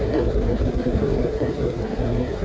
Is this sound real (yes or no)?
no